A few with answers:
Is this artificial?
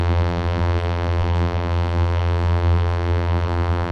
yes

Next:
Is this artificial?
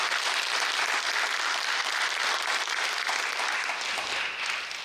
no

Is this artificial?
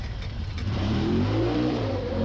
yes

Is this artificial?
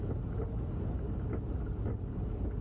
no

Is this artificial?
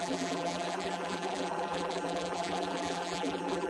yes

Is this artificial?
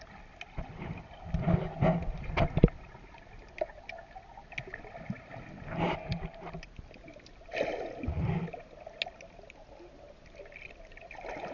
no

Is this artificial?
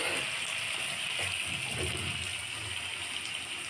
no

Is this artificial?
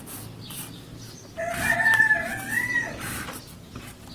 no